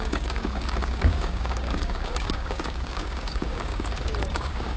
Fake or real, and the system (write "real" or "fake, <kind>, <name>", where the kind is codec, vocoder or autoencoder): fake, codec, DAC